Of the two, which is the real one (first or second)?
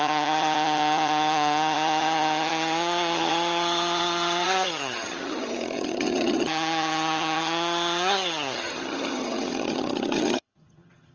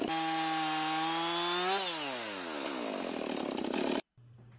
second